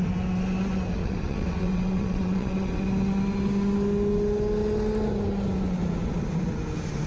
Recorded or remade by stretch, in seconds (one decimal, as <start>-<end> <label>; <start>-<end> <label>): 0.0-1.0 recorded; 1.0-2.8 remade; 2.8-7.1 recorded